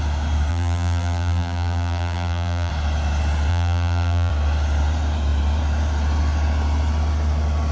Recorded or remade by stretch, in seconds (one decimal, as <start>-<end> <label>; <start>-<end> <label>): 0.0-0.5 recorded; 0.5-2.7 remade; 2.7-3.5 recorded; 3.5-4.3 remade; 4.3-7.7 recorded

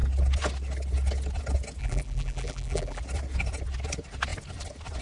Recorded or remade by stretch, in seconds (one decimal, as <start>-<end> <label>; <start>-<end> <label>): 0.0-1.8 recorded; 1.8-3.0 remade; 3.0-5.0 recorded

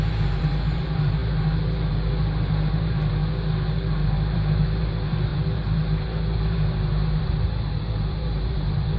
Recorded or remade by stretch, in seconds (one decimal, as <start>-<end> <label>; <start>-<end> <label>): 0.0-3.2 remade; 3.2-3.9 recorded; 3.9-9.0 remade

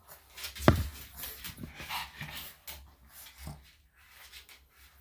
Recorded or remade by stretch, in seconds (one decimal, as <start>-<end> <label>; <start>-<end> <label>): 0.0-5.0 recorded

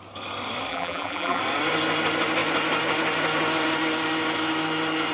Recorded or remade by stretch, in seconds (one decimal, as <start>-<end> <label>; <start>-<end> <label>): 0.0-0.7 recorded; 0.7-1.4 remade; 1.4-5.1 recorded